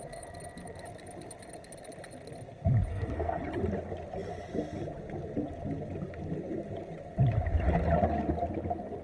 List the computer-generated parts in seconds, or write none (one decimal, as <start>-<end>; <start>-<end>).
2.9-3.4